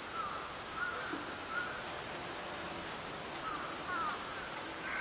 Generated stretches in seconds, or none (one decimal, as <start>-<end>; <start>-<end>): 0.0-5.0